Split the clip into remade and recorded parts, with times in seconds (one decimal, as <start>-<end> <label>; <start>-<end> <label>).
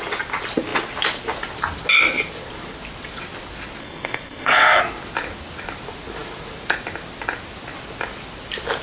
0.0-3.8 recorded; 3.8-4.8 remade; 4.8-8.8 recorded